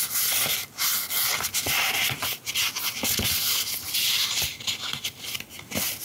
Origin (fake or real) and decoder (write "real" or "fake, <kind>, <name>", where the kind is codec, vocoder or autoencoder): real